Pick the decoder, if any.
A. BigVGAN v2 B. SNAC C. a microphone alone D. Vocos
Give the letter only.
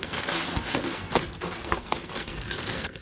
B